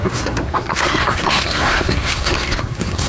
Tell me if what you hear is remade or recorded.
remade